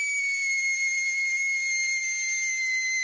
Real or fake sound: real